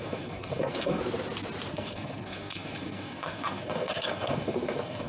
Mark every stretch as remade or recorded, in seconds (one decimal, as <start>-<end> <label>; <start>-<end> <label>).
0.0-1.0 remade; 1.0-1.7 recorded; 1.7-5.1 remade